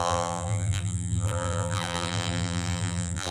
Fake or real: fake